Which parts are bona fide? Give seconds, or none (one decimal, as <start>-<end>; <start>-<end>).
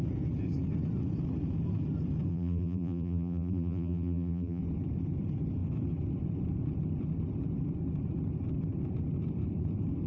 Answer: 0.0-2.3; 4.6-10.1